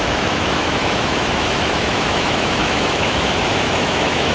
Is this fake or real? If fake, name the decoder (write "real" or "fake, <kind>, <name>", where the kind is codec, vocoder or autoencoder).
fake, autoencoder, DAC-VAE